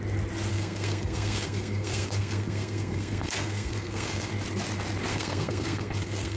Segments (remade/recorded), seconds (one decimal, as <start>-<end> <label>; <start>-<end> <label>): 0.0-0.5 recorded; 0.5-4.3 remade; 4.3-5.1 recorded; 5.1-6.4 remade